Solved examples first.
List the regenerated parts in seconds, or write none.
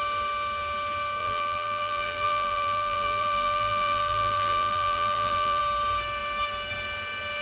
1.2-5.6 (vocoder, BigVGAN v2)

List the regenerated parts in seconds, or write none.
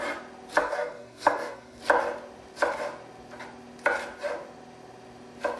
0.6-1.8 (codec, SNAC)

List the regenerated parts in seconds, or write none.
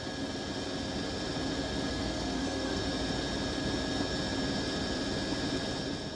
1.9-2.8 (codec, SNAC)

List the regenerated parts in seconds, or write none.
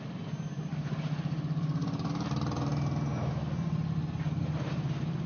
0.7-2.1 (vocoder, BigVGAN v2)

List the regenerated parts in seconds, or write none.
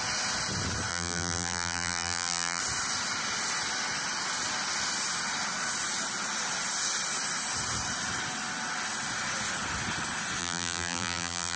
0.9-2.6 (vocoder, BigVGAN v2); 10.4-11.6